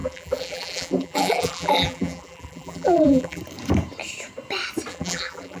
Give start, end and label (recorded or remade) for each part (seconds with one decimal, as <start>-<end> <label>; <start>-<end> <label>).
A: 0.0-3.4 remade; 3.4-4.9 recorded; 4.9-5.6 remade